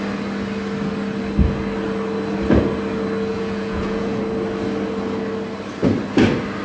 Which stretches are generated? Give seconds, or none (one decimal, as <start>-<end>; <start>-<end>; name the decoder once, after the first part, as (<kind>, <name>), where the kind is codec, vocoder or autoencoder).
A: 3.3-4.2 (vocoder, Vocos)